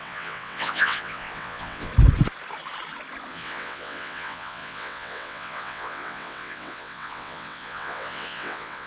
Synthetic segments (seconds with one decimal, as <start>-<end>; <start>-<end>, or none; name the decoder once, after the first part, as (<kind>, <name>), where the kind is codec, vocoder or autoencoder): 0.0-1.9 (vocoder, WaveNeXt); 3.3-8.9